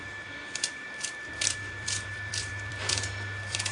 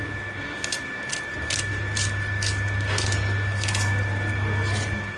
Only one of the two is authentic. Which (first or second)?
second